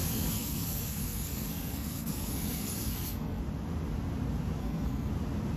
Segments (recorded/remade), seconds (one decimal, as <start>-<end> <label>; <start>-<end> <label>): 0.0-3.4 remade; 3.4-4.6 recorded; 4.6-5.1 remade; 5.1-5.6 recorded